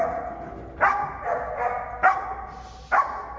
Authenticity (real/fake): real